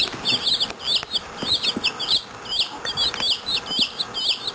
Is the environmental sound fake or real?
real